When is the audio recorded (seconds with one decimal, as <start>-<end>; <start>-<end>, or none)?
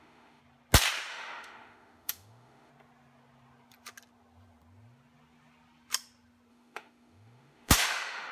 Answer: 0.4-1.1; 2.7-6.5